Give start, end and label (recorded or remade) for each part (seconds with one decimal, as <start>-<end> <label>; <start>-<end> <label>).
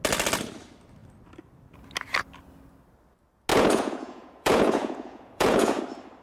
0.0-3.5 recorded; 3.5-5.8 remade; 5.8-6.2 recorded